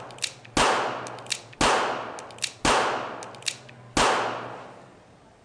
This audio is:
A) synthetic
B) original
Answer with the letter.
B